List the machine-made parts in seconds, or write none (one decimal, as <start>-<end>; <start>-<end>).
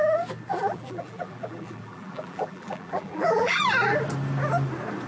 0.5-3.6